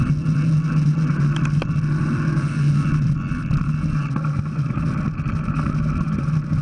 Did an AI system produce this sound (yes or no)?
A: no